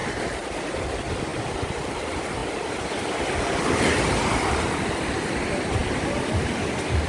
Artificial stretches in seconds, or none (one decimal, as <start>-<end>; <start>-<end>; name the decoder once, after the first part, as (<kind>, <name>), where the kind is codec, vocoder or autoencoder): 1.3-2.0 (vocoder, BigVGAN v2); 2.4-3.2